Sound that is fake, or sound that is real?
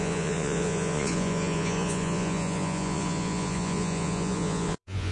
fake